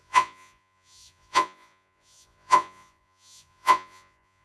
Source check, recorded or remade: remade